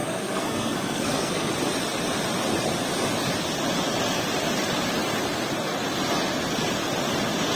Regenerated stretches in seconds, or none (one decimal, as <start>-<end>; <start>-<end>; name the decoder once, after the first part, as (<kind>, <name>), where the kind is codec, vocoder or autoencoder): 0.0-1.5 (codec, SNAC)